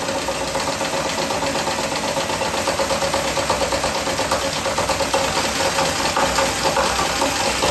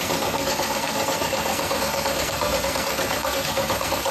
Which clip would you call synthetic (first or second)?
second